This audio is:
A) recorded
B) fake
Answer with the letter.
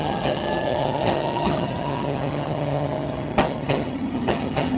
B